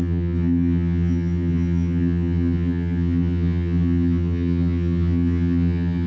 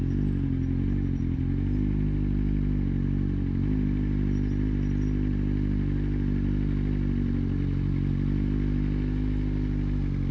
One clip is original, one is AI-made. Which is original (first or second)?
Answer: second